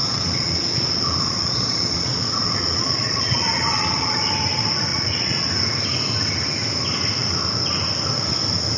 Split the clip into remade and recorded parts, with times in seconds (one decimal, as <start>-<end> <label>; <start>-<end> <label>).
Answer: 0.0-4.3 remade; 4.3-4.9 recorded; 4.9-5.5 remade; 5.5-8.8 recorded